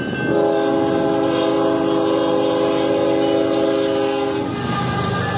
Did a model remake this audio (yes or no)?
no